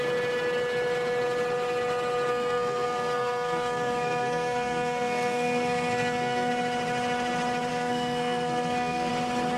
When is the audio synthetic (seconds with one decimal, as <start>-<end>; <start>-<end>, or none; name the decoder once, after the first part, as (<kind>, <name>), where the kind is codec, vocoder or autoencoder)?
2.3-6.5 (codec, SNAC); 7.7-9.1

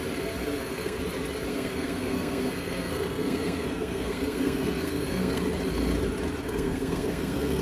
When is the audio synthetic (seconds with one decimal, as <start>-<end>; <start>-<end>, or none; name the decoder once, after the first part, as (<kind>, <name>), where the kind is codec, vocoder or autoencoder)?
0.4-1.0 (codec, SNAC); 1.5-5.4; 6.4-7.6

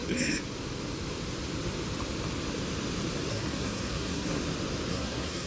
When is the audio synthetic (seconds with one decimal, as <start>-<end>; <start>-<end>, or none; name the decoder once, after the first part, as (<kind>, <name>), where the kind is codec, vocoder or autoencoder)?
3.3-4.4 (codec, SNAC); 4.9-5.5